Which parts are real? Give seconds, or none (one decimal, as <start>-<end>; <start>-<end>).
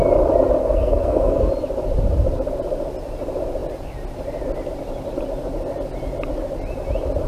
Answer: 0.0-0.6; 1.5-7.3